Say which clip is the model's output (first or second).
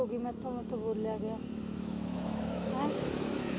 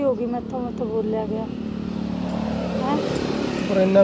first